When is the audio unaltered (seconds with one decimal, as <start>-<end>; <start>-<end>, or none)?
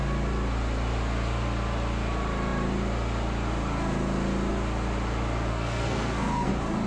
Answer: 0.0-5.5; 6.5-6.9